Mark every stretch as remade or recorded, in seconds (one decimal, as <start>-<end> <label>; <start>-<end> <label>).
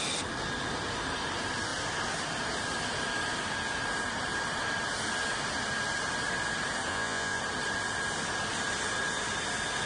0.0-6.9 recorded; 6.9-7.4 remade; 7.4-9.9 recorded